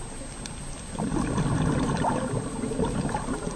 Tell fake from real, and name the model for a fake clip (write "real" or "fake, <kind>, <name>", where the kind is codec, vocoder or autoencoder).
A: real